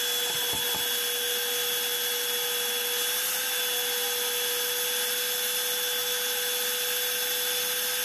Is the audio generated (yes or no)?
no